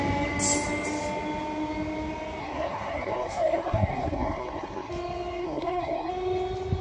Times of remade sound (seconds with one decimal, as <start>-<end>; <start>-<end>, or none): 2.4-4.9; 5.4-6.1